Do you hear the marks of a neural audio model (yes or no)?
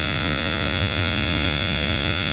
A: yes